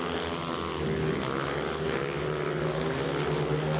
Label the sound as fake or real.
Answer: real